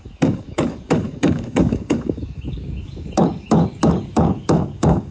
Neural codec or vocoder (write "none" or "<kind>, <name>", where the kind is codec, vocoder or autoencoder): codec, DAC